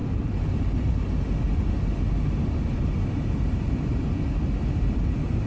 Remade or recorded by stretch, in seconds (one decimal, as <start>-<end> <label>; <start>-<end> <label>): 0.0-5.5 recorded